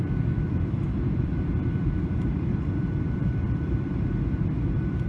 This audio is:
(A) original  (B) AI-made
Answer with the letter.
B